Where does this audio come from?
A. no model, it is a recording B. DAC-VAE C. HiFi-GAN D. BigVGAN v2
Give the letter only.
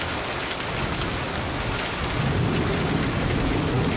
A